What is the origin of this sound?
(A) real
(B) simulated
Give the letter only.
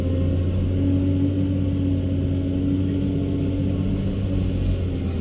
A